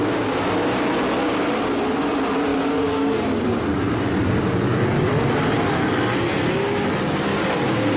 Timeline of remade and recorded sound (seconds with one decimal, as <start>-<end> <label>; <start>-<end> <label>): 0.0-2.5 recorded; 2.5-3.6 remade; 3.6-7.3 recorded; 7.3-8.0 remade